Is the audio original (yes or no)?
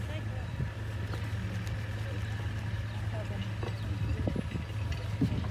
yes